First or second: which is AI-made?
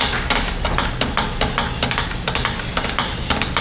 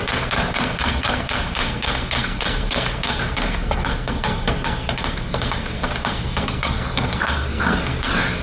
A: second